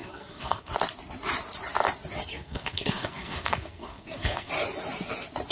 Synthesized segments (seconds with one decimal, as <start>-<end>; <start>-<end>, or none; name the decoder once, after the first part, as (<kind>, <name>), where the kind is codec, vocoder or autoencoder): 0.0-0.7 (codec, SNAC); 2.3-4.5